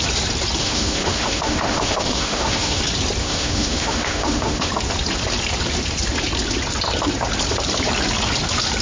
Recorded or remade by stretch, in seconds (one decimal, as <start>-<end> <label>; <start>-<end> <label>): 0.0-0.6 recorded; 0.6-2.8 remade; 2.8-3.2 recorded; 3.2-4.7 remade; 4.7-8.8 recorded